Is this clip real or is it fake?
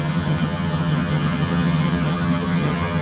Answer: fake